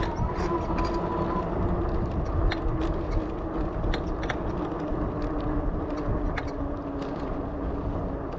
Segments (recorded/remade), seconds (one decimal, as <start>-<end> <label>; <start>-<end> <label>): 0.0-8.4 recorded